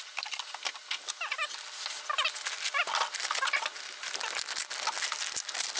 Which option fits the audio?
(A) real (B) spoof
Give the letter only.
A